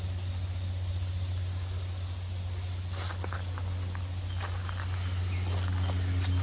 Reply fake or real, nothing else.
real